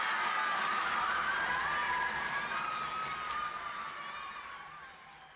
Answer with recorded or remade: recorded